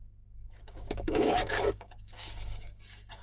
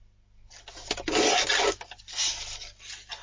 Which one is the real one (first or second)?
second